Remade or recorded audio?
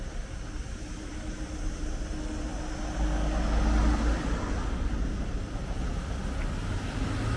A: recorded